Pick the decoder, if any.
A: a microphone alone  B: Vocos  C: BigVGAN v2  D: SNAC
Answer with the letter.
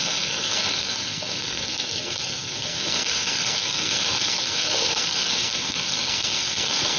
D